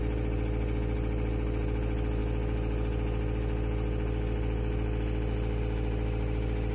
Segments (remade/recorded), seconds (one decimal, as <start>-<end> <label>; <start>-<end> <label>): 0.0-6.7 recorded